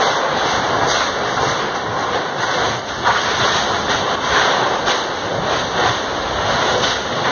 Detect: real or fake real